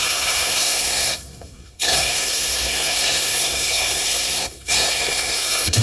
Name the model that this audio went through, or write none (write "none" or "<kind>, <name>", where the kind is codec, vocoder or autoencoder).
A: codec, SNAC